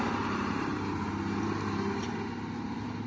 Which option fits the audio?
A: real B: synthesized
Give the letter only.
A